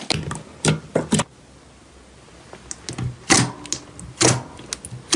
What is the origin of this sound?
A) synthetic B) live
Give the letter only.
B